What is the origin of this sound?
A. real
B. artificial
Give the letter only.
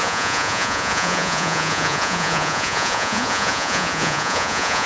B